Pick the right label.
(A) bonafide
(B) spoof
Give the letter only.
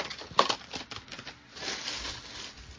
A